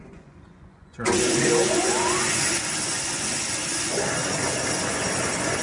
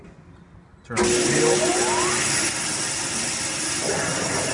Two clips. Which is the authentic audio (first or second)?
second